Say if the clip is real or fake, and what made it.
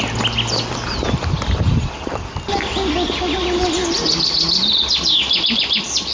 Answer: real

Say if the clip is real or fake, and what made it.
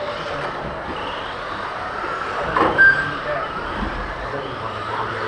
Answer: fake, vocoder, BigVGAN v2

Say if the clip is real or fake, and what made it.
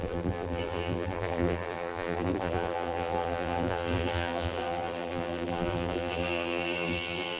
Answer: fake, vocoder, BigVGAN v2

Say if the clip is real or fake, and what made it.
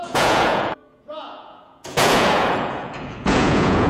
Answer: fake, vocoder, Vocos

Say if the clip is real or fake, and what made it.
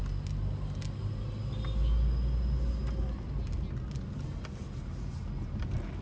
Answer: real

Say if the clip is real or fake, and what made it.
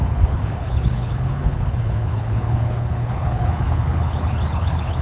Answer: fake, codec, HILCodec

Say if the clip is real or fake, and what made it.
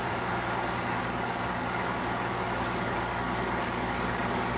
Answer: fake, codec, DAC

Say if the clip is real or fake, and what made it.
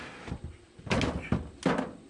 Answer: real